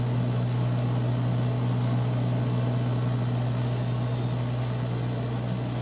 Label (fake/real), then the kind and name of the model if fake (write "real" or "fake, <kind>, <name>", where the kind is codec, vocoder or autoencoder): real